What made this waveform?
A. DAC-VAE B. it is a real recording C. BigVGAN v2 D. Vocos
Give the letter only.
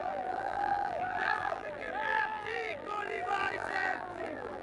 C